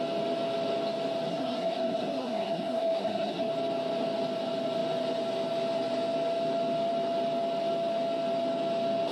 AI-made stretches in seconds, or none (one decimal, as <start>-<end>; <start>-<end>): 1.3-3.5